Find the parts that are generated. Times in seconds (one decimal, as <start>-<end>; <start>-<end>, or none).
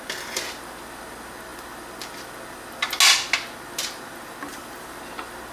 4.5-5.0